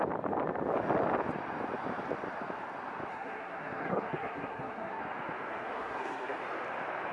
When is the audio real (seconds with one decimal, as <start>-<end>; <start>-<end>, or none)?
0.0-3.1; 5.0-5.5; 6.4-7.1